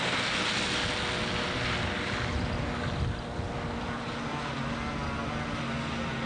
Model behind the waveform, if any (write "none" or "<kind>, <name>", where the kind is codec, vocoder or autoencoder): none